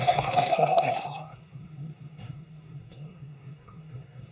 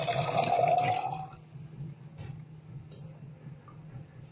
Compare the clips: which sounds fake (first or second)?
first